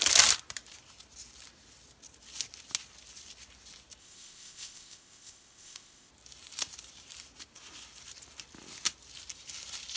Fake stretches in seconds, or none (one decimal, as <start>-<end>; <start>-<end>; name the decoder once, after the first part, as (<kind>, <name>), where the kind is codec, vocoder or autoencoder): 4.0-6.1 (codec, ZipCodec)